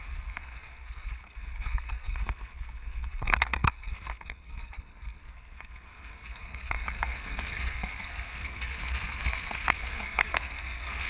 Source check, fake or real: fake